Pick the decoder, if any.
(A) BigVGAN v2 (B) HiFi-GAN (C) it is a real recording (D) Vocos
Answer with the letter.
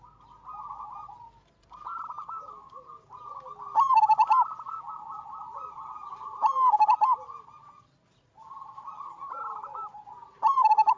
C